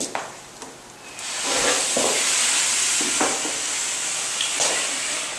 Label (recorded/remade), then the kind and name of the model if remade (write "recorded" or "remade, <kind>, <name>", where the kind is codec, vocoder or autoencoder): recorded